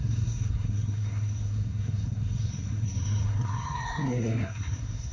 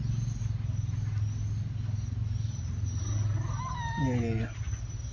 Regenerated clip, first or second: first